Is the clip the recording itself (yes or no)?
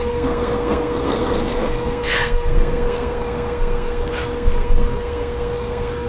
no